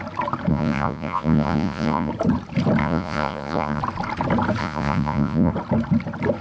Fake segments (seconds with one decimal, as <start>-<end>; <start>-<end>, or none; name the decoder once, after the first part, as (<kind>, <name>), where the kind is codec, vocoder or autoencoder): 0.5-2.1 (vocoder, Vocos); 2.8-3.8; 4.6-5.5